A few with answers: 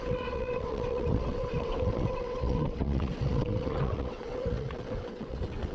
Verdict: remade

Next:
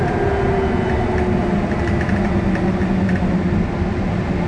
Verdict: recorded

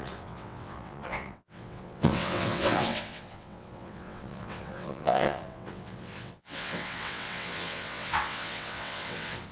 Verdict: remade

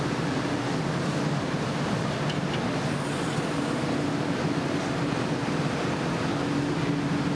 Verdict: recorded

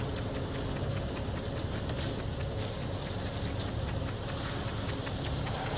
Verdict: recorded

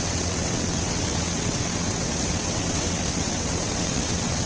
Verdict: remade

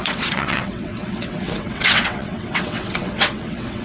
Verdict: remade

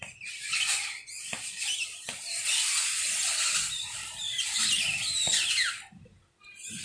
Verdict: recorded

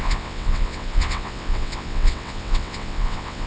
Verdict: remade